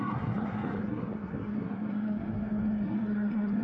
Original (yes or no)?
no